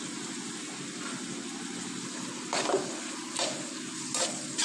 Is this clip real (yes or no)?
yes